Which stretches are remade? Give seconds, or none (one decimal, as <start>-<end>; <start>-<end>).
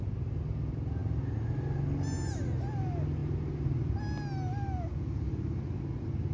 3.2-4.0